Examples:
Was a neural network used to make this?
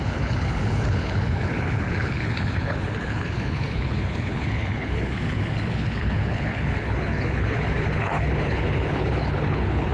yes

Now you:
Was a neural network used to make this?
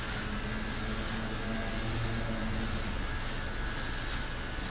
no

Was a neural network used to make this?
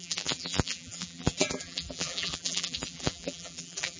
yes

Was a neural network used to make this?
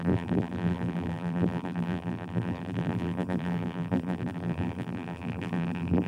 yes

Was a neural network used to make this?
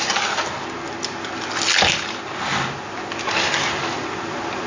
no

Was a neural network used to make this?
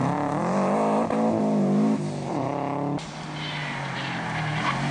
no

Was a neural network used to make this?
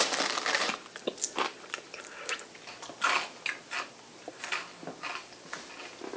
no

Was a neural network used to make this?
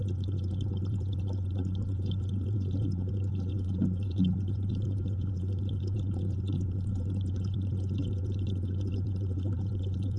yes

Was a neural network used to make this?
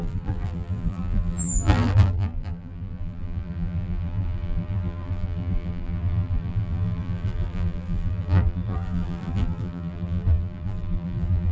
yes